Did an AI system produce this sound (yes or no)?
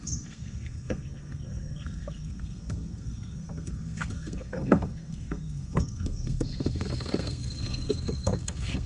yes